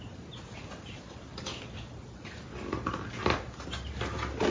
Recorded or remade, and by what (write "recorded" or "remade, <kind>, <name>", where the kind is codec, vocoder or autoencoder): recorded